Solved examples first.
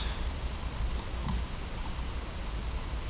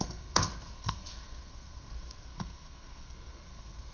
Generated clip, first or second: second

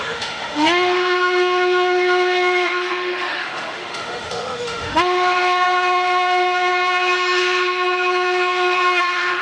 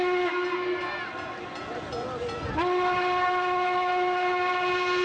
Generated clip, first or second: first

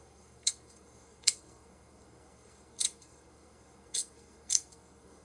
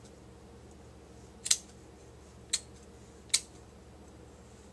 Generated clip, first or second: first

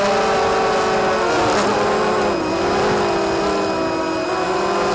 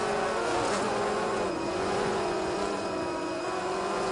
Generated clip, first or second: second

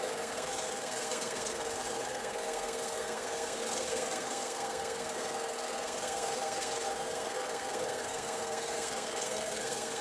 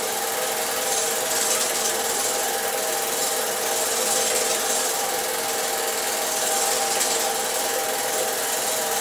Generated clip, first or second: first